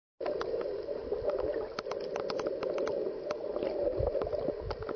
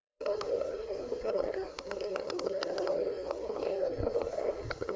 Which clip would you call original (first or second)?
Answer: first